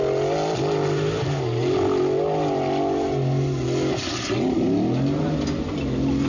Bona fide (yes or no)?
yes